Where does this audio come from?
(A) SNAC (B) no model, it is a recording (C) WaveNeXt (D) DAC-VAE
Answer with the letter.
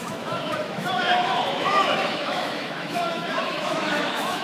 D